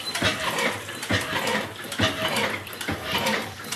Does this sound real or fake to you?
fake